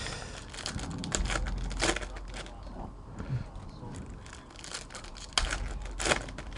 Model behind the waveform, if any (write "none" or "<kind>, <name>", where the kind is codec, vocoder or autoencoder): none